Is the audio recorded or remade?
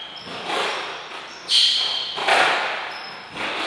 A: remade